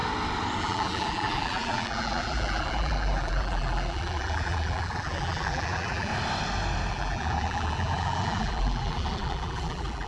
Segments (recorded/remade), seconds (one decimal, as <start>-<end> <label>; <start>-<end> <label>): 0.0-0.6 recorded; 0.6-6.1 remade; 6.1-6.9 recorded; 6.9-10.1 remade